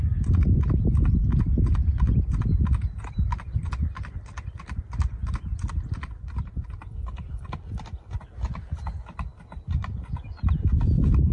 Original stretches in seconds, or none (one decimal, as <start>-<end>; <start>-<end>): 0.0-11.3